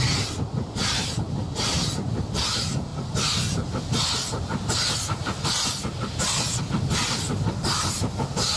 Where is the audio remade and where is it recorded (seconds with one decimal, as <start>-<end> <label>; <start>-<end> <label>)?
0.0-8.6 recorded